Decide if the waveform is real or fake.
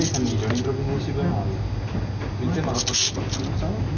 real